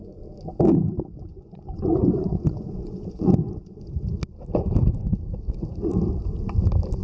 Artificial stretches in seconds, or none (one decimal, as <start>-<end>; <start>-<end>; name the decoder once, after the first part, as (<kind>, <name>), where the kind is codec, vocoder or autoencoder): 1.3-4.1 (vocoder, Vocos)

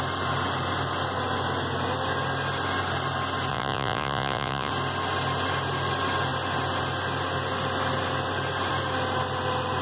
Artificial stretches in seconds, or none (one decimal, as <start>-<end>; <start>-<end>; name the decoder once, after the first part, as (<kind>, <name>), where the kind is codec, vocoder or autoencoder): 3.5-4.7 (vocoder, Vocos)

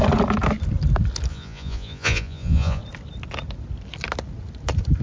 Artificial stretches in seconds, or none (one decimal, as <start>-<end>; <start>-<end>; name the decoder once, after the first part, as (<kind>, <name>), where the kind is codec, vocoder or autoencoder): 1.3-2.8 (vocoder, Vocos)

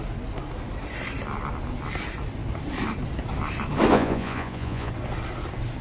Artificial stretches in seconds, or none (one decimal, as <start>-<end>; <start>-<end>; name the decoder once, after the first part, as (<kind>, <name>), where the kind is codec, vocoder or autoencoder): 3.9-4.9 (vocoder, Vocos)

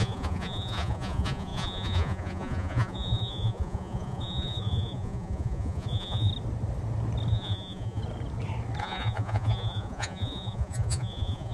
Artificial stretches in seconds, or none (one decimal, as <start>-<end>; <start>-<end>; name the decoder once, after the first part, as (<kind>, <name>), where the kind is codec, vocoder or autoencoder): 0.0-6.3 (vocoder, Vocos); 7.3-8.0; 8.8-11.5